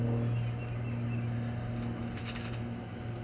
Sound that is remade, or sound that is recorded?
recorded